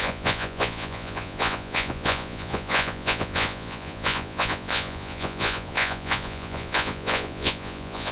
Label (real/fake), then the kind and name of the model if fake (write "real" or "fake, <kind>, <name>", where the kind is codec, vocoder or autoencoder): fake, vocoder, Vocos